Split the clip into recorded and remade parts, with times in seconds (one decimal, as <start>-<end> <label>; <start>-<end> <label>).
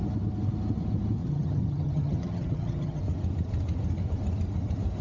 0.0-1.2 recorded; 1.2-3.0 remade; 3.0-5.0 recorded